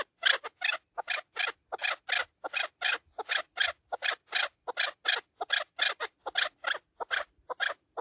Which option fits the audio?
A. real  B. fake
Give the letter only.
A